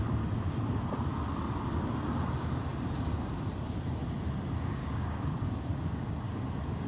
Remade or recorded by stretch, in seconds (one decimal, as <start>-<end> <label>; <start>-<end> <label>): 0.0-4.8 recorded; 4.8-6.3 remade; 6.3-6.9 recorded

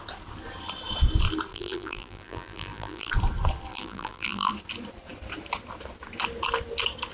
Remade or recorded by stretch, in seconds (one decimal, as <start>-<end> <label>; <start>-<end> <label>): 0.0-1.5 recorded; 1.5-3.1 remade; 3.1-3.7 recorded; 3.7-4.5 remade; 4.5-7.1 recorded

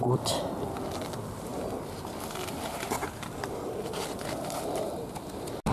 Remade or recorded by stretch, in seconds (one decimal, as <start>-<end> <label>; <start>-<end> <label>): 0.0-5.7 recorded

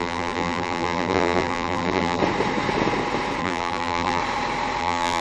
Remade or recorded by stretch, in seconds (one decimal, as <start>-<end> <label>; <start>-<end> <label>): 0.0-2.2 remade; 2.2-3.4 recorded; 3.4-4.2 remade; 4.2-4.8 recorded; 4.8-5.2 remade

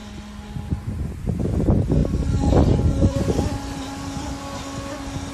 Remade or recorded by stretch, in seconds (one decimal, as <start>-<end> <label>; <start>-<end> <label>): 0.0-5.3 recorded